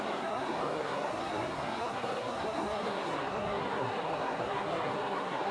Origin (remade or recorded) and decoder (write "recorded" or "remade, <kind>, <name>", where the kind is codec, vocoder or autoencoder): remade, codec, SNAC